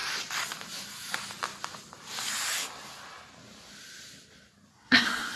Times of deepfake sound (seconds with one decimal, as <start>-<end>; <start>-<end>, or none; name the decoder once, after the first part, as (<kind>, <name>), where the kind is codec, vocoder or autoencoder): 4.7-5.4 (codec, SNAC)